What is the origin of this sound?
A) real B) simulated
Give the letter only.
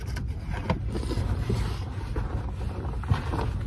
A